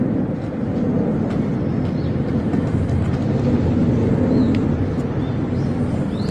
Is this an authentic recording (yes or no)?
yes